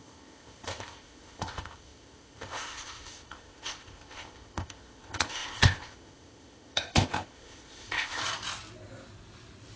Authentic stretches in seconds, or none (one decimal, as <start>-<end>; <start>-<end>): 8.2-9.8